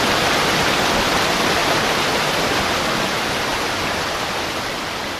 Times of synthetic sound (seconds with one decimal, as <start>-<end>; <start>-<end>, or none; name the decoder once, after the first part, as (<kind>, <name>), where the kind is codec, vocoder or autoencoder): 1.6-2.8 (vocoder, BigVGAN v2)